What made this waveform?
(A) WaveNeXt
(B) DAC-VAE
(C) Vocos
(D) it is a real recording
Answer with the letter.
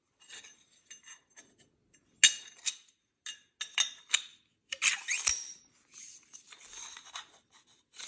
D